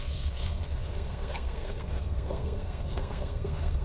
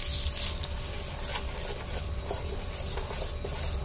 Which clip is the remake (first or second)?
first